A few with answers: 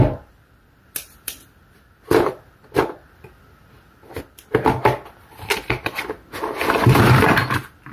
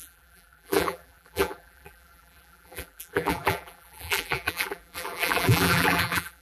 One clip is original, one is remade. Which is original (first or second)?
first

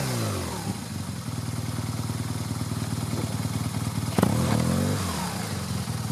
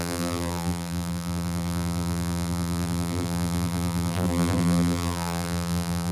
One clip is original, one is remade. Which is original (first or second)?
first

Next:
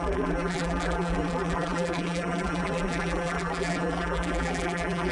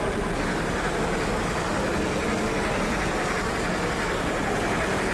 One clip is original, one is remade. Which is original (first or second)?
second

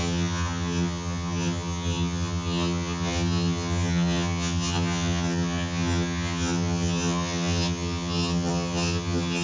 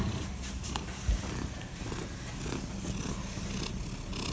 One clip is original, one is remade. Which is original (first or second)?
second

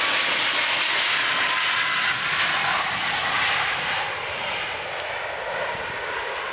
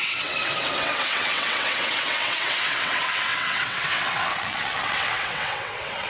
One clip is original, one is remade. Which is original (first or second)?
first